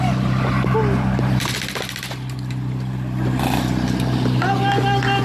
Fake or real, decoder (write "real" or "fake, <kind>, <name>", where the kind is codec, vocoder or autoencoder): real